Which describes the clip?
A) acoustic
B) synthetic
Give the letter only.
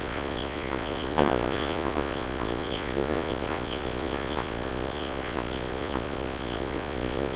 B